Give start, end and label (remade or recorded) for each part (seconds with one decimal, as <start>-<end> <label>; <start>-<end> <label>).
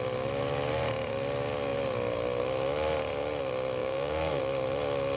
0.0-3.8 recorded; 3.8-4.4 remade; 4.4-5.2 recorded